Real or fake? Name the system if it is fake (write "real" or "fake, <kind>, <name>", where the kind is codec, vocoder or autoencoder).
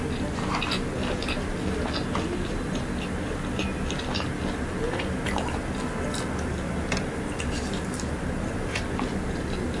real